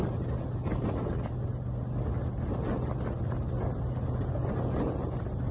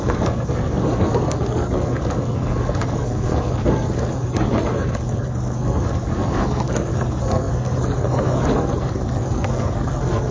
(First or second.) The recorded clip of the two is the first